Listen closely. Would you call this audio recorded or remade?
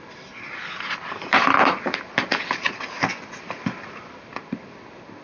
recorded